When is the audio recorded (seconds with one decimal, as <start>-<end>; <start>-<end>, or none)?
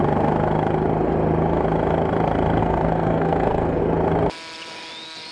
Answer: 0.0-2.6; 3.8-5.3